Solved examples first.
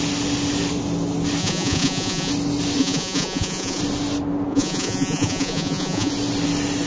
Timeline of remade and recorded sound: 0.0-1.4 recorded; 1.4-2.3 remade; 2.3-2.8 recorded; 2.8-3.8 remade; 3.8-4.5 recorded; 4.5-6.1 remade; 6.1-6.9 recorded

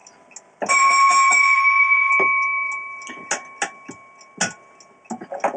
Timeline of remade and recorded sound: 0.0-0.7 recorded; 0.7-2.1 remade; 2.1-5.6 recorded

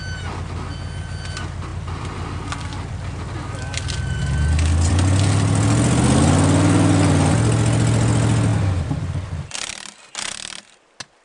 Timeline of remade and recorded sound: 0.0-1.7 recorded; 1.7-3.8 remade; 3.8-8.5 recorded; 8.5-9.7 remade; 9.7-11.2 recorded

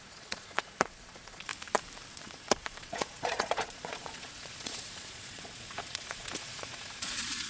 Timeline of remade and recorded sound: 0.0-1.5 remade; 1.5-2.1 recorded; 2.1-7.5 remade

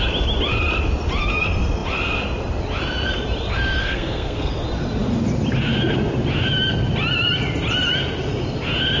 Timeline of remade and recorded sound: 0.0-3.8 recorded; 3.8-4.5 remade; 4.5-9.0 recorded

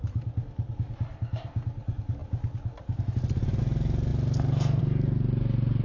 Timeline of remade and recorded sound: 0.0-5.8 recorded